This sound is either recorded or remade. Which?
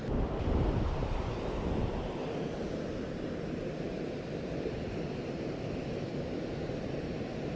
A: recorded